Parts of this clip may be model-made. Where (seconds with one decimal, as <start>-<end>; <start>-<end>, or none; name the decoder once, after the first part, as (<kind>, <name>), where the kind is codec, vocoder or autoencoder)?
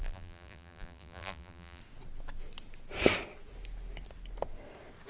0.0-1.8 (vocoder, BigVGAN v2)